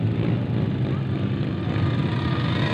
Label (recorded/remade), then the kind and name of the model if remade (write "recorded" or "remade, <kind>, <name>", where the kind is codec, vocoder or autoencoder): recorded